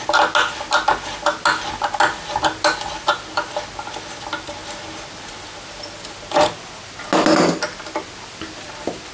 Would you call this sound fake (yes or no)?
no